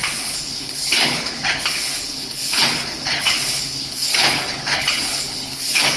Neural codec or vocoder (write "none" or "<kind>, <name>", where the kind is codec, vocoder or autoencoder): codec, HILCodec